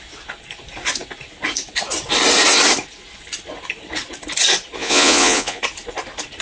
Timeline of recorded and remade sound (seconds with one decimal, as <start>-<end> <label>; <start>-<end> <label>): 0.0-4.8 recorded; 4.8-5.6 remade; 5.6-6.4 recorded

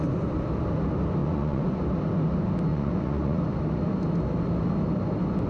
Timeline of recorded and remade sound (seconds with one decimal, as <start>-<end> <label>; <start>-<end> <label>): 0.0-1.2 recorded; 1.2-1.8 remade; 1.8-2.7 recorded; 2.7-3.6 remade; 3.6-5.5 recorded

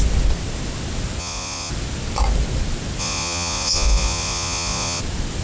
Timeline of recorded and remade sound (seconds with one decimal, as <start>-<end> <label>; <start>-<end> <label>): 0.0-1.2 recorded; 1.2-1.7 remade; 1.7-3.0 recorded; 3.0-5.0 remade; 5.0-5.4 recorded

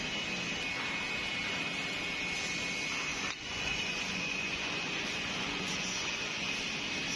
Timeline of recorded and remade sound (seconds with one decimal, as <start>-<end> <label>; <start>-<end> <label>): 0.0-3.1 recorded; 3.1-6.5 remade; 6.5-7.2 recorded

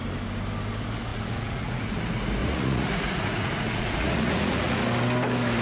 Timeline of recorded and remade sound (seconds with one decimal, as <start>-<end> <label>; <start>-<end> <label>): 0.0-1.1 recorded; 1.1-2.0 remade; 2.0-2.4 recorded; 2.4-4.8 remade; 4.8-5.6 recorded

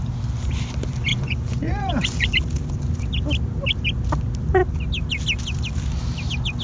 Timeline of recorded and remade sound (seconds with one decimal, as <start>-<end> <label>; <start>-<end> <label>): 0.0-1.1 recorded; 1.1-2.3 remade; 2.3-6.6 recorded